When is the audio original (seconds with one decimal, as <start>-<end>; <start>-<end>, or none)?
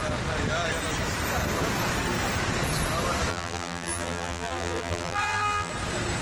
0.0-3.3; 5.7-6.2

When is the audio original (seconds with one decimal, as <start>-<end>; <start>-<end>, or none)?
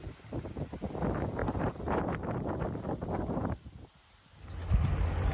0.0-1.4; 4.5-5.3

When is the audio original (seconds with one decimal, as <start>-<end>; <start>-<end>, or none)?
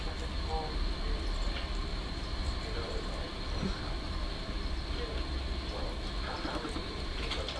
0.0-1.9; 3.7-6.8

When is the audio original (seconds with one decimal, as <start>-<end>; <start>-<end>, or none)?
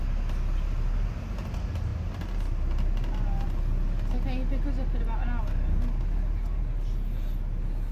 0.0-7.9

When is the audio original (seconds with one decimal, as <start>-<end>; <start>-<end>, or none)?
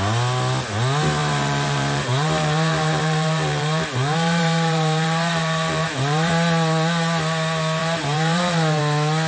0.0-1.2; 6.3-7.8; 8.8-9.3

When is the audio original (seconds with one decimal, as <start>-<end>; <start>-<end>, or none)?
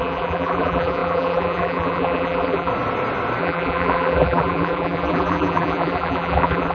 2.7-3.4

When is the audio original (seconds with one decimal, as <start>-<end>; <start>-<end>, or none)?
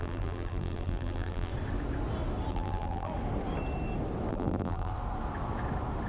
1.5-2.5; 3.1-4.3; 4.9-6.1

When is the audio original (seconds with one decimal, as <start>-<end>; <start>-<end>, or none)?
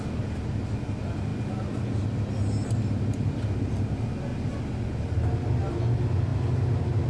0.0-7.1